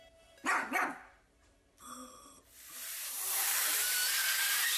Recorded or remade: recorded